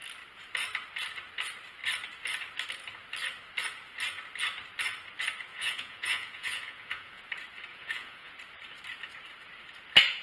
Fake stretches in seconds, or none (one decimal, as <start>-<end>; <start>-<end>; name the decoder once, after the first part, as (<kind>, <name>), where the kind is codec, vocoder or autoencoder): 5.5-7.2 (vocoder, Vocos); 7.7-8.3